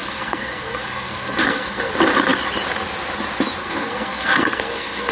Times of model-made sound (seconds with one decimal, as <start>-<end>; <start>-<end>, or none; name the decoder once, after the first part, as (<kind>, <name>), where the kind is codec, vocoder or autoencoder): 0.0-1.9 (codec, SNAC); 3.6-5.1